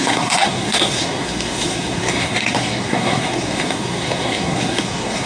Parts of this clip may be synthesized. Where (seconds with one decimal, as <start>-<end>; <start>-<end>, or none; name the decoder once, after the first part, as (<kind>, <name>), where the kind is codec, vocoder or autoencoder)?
0.0-5.3 (codec, SNAC)